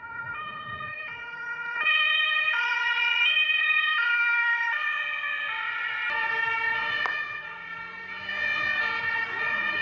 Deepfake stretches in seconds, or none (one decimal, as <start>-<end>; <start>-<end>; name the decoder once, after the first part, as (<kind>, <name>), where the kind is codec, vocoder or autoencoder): 0.0-4.1 (vocoder, Vocos); 7.1-7.7; 9.0-9.8